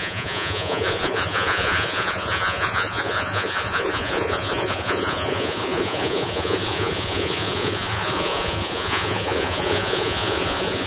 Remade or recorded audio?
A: remade